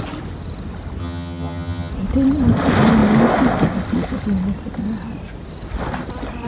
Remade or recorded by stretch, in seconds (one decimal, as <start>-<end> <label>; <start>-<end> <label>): 0.0-1.0 recorded; 1.0-1.9 remade; 1.9-6.5 recorded